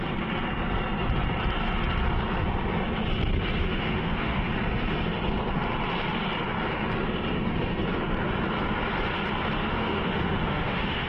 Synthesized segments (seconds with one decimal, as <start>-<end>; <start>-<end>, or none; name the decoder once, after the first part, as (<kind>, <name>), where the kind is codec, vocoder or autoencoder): 3.6-4.5 (autoencoder, DAC-VAE); 9.6-11.1